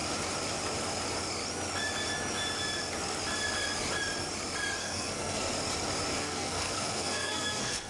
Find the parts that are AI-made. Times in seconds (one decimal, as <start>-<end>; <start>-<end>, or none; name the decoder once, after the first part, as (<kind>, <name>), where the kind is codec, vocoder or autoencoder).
4.8-5.4 (codec, SNAC); 6.1-7.9

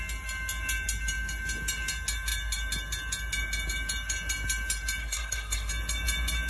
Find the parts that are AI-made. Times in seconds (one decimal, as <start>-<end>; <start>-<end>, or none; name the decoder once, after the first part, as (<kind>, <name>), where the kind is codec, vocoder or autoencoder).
5.0-5.7 (codec, SNAC)

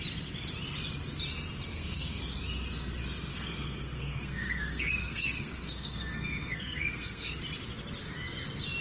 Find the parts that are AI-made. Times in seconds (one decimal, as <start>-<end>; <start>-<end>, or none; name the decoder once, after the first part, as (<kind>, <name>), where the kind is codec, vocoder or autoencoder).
1.7-2.2 (codec, SNAC); 3.3-7.4

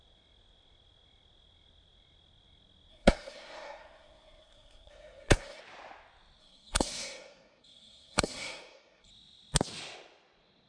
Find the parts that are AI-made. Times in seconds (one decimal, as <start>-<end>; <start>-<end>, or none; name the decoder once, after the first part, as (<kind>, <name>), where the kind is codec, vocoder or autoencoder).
2.9-5.6 (codec, SNAC); 6.4-9.1

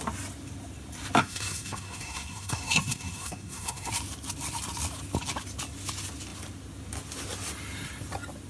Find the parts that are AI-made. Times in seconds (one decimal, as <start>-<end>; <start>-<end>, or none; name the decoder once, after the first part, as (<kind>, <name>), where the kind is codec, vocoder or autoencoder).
1.2-3.9 (codec, SNAC)

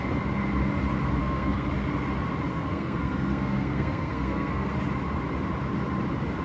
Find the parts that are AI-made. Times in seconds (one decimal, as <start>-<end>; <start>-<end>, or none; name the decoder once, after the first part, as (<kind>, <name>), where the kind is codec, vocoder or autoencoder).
1.2-1.7 (codec, SNAC); 2.5-4.7

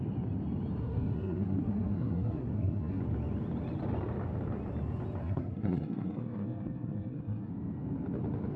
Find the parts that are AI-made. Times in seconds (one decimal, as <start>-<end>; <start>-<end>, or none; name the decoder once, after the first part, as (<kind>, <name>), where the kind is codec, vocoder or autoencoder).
0.8-3.0 (codec, SNAC); 5.2-7.5

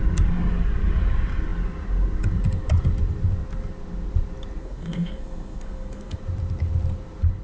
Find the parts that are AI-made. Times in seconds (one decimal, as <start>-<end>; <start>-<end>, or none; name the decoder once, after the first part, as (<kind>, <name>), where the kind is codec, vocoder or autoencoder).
4.6-6.2 (codec, SNAC)